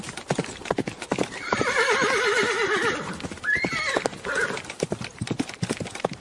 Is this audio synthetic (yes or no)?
no